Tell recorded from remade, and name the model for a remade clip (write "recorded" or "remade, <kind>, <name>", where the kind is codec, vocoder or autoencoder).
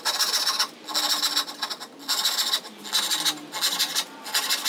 recorded